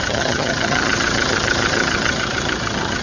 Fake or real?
fake